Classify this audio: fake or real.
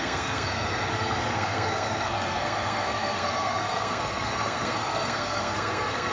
fake